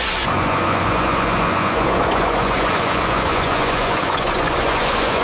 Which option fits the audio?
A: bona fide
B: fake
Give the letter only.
B